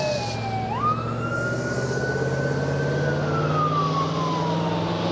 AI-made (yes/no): no